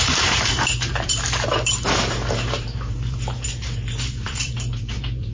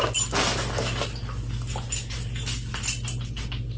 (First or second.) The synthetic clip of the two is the first